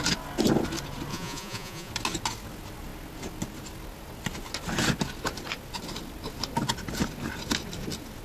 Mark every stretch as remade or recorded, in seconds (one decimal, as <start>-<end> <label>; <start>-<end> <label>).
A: 0.0-1.1 recorded; 1.1-1.9 remade; 1.9-8.2 recorded